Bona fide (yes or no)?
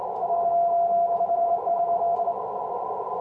yes